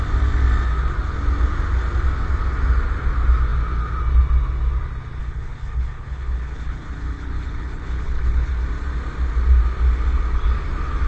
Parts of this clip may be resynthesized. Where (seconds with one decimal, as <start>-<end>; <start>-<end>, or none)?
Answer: 5.2-8.5